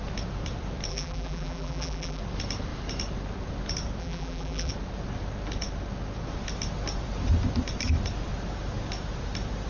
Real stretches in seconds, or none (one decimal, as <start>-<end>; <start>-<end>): 0.0-0.9; 2.2-4.0; 4.7-9.7